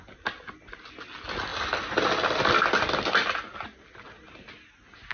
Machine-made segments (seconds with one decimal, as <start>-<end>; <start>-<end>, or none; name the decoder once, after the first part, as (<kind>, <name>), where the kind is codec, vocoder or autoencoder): none

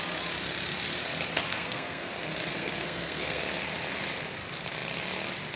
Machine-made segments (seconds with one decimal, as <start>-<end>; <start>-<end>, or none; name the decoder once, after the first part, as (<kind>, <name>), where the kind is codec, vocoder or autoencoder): 1.5-2.1 (codec, SNAC); 2.5-3.4